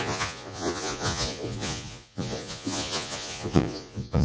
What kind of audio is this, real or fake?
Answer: fake